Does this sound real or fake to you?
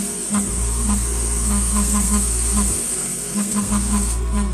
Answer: fake